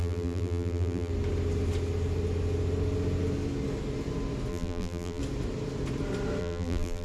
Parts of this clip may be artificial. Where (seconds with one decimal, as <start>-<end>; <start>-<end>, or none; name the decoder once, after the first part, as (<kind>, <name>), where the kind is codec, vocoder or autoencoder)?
0.0-1.1 (vocoder, BigVGAN v2); 4.5-5.2; 6.4-7.0